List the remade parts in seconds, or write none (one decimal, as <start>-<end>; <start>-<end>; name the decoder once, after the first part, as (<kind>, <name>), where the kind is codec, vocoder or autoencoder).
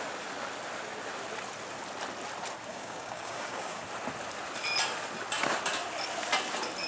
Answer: 2.7-3.8 (codec, DAC)